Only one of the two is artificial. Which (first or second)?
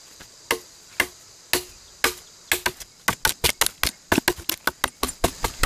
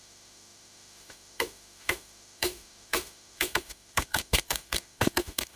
second